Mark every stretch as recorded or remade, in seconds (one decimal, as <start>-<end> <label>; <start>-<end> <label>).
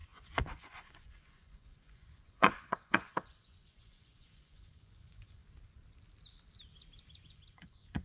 0.0-5.4 remade; 5.4-7.2 recorded; 7.2-8.0 remade